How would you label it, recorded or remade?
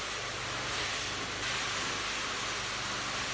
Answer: recorded